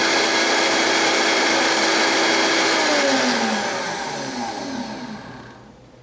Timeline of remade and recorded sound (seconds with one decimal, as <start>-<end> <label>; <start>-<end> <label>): 0.0-6.0 recorded